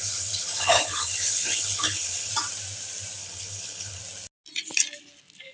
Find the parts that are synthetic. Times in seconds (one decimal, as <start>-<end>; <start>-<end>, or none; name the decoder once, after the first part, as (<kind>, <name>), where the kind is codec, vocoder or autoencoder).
0.0-2.3 (codec, HILCodec); 3.2-4.0